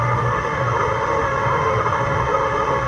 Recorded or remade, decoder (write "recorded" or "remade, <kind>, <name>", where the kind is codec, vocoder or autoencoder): remade, autoencoder, DAC-VAE